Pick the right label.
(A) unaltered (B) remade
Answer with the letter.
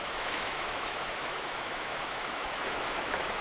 B